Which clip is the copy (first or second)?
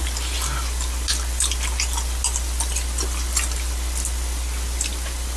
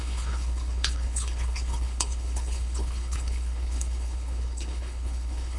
second